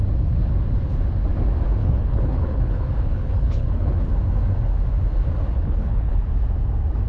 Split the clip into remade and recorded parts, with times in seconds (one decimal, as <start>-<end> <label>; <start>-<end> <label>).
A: 0.0-1.8 recorded; 1.8-4.1 remade; 4.1-5.5 recorded; 5.5-6.2 remade; 6.2-7.1 recorded

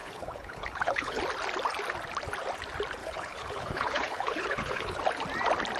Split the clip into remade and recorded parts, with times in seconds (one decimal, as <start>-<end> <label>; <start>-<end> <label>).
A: 0.0-1.2 remade; 1.2-3.0 recorded; 3.0-5.0 remade; 5.0-5.8 recorded

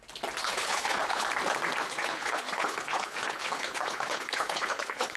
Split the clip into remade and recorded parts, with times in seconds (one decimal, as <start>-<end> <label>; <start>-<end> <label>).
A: 0.0-0.4 recorded; 0.4-1.3 remade; 1.3-1.8 recorded; 1.8-5.2 remade

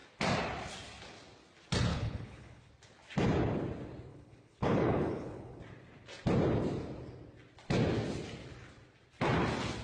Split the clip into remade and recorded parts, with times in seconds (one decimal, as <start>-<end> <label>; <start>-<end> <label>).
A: 0.0-1.9 recorded; 1.9-2.7 remade; 2.7-4.1 recorded; 4.1-5.6 remade; 5.6-9.8 recorded

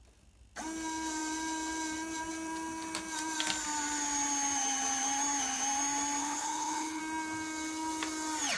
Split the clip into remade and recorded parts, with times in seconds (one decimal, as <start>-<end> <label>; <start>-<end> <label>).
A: 0.0-6.2 recorded; 6.2-7.0 remade; 7.0-8.6 recorded

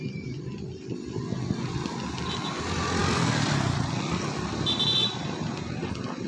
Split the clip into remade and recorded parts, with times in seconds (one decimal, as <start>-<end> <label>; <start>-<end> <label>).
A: 0.0-6.3 recorded

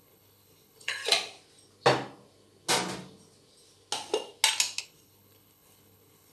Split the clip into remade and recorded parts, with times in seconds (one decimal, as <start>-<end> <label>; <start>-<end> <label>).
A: 0.0-1.0 remade; 1.0-4.8 recorded; 4.8-6.3 remade

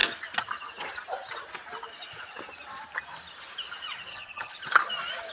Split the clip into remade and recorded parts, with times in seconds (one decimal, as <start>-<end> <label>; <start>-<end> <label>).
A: 0.0-4.1 recorded; 4.1-4.6 remade; 4.6-5.3 recorded